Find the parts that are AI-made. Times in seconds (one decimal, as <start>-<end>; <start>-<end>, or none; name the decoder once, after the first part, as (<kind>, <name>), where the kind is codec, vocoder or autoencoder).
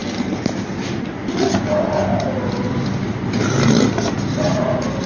none